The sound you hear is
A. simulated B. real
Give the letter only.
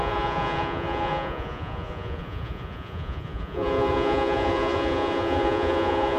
A